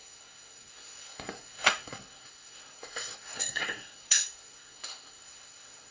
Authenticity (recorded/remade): remade